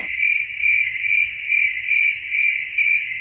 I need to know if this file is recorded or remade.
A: recorded